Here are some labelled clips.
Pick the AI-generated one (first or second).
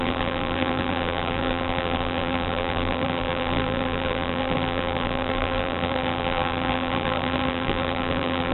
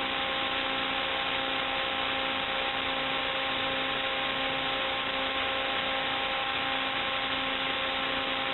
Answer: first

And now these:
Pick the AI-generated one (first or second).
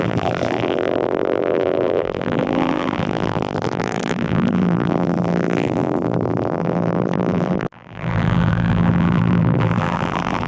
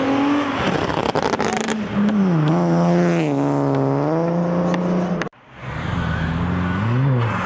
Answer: first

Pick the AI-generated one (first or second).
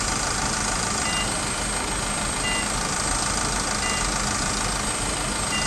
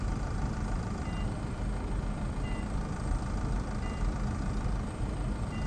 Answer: second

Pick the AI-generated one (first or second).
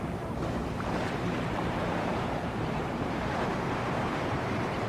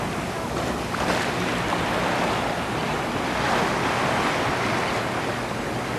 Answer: first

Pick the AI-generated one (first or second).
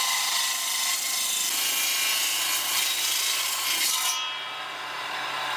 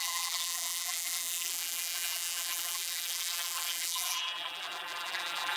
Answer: second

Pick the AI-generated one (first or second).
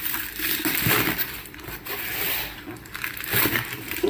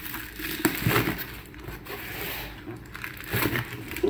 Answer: first